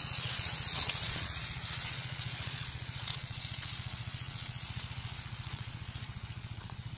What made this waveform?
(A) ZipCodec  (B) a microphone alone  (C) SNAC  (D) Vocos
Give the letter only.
D